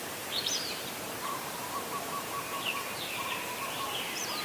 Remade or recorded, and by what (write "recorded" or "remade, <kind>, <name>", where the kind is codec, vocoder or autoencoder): remade, vocoder, BigVGAN v2